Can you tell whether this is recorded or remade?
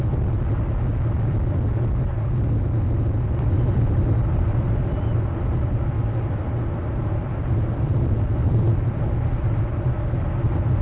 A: recorded